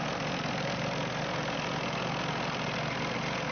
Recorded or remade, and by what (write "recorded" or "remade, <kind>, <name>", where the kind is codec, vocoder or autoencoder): recorded